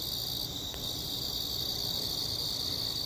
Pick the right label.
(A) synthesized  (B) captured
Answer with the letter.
B